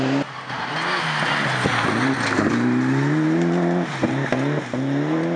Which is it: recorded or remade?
recorded